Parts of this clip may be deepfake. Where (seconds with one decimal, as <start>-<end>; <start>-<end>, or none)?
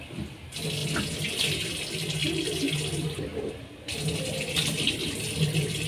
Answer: none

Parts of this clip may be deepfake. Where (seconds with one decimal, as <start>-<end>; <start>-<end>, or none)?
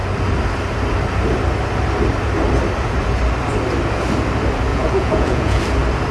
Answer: 4.7-5.6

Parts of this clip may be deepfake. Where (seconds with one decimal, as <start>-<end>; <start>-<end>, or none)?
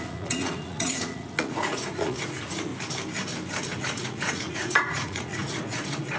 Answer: 0.0-2.7; 3.8-6.2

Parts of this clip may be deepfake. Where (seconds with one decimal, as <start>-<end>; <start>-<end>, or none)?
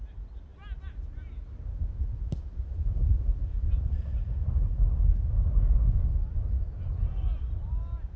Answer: none